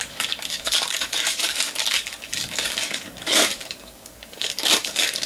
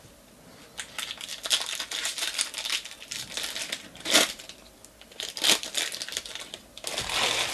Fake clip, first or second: first